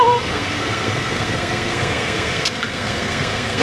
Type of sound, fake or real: fake